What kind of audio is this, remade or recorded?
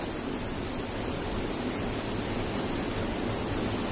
recorded